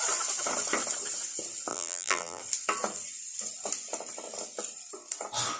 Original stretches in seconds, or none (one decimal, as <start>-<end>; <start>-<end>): 0.0-1.7; 2.4-5.6